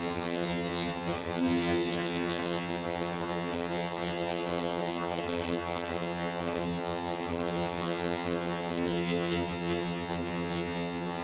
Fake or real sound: fake